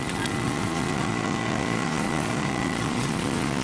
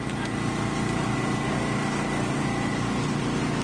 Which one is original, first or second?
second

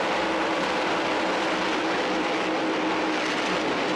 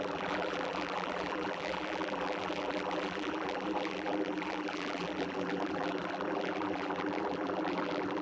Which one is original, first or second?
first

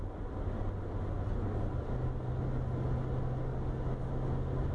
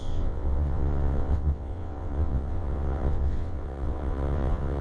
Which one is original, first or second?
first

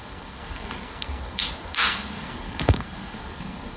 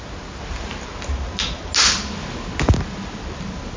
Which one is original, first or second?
second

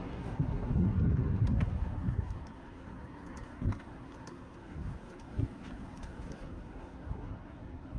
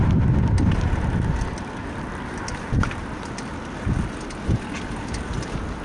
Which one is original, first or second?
second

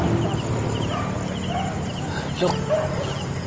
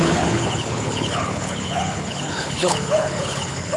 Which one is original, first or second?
first